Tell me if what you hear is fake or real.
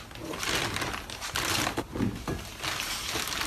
real